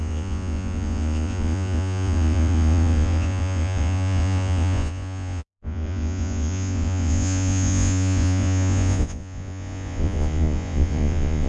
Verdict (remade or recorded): remade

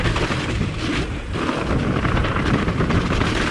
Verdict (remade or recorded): remade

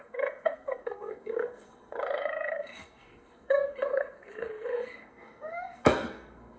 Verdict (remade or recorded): remade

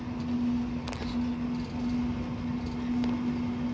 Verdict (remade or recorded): recorded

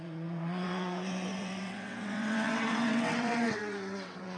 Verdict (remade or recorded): remade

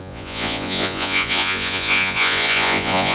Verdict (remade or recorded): remade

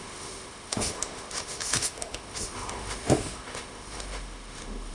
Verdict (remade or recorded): remade